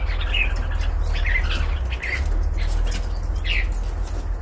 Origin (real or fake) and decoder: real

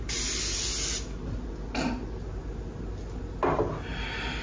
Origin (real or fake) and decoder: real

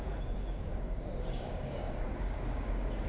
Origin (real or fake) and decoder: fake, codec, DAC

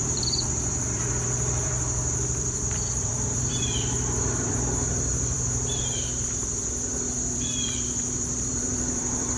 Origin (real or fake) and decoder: fake, vocoder, BigVGAN v2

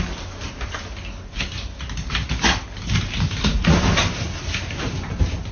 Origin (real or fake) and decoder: real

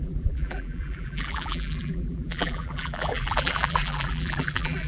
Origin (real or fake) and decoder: fake, vocoder, BigVGAN v2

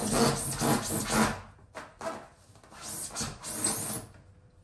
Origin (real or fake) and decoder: real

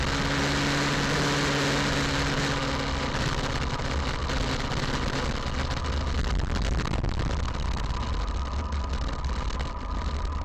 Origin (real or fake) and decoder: real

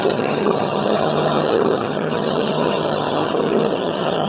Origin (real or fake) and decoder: fake, vocoder, HiFi-GAN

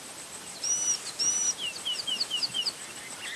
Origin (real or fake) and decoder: real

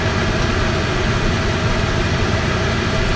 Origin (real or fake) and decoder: real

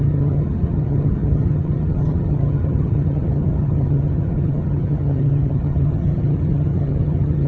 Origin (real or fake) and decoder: fake, vocoder, HiFi-GAN